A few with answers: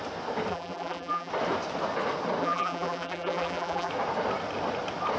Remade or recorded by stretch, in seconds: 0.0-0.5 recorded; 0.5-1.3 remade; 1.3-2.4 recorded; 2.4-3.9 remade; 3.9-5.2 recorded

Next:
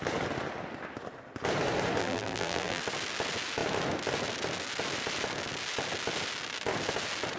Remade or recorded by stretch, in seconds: 0.0-2.0 recorded; 2.0-2.8 remade; 2.8-7.4 recorded

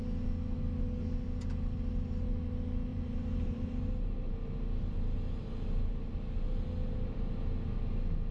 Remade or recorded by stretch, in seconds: 0.0-2.9 recorded; 2.9-6.1 remade; 6.1-8.3 recorded